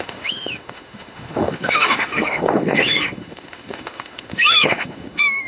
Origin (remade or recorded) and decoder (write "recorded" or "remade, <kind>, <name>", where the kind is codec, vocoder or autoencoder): remade, autoencoder, DAC-VAE